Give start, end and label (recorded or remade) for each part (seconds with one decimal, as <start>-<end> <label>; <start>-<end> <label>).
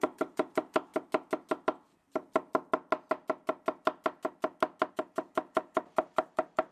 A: 0.0-0.9 remade; 0.9-4.9 recorded; 4.9-6.7 remade